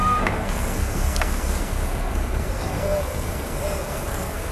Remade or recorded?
remade